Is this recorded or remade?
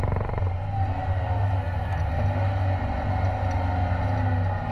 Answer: recorded